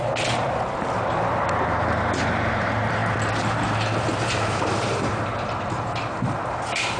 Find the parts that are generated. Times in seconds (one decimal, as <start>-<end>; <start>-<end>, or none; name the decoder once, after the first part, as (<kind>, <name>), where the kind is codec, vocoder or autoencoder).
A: 0.0-7.0 (vocoder, BigVGAN v2)